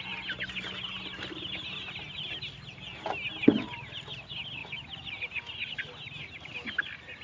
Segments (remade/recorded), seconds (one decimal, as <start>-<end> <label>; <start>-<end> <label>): 0.0-7.2 recorded